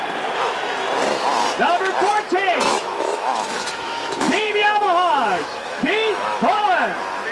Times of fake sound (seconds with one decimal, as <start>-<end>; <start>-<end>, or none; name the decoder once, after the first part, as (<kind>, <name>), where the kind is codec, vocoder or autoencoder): 2.7-6.6 (autoencoder, DAC-VAE)